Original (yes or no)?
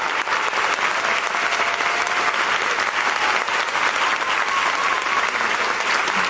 yes